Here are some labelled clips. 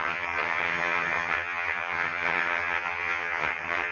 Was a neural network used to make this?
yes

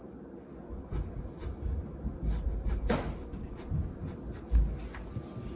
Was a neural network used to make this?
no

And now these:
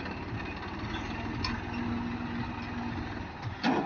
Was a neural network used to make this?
no